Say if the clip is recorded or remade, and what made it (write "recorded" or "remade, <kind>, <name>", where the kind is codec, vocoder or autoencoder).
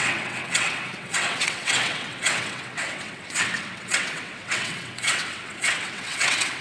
remade, vocoder, WaveNeXt